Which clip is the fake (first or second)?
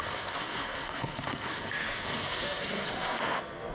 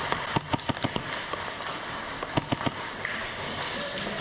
first